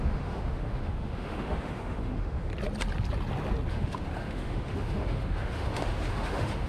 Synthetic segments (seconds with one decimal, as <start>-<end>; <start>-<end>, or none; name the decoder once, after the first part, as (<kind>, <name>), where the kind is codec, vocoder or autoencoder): 0.0-2.5 (autoencoder, DAC-VAE); 3.7-6.7